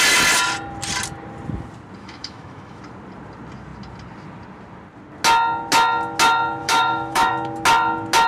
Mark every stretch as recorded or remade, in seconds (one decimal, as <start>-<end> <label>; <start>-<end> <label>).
0.0-2.0 recorded; 2.0-2.8 remade; 2.8-6.6 recorded; 6.6-7.3 remade; 7.3-8.3 recorded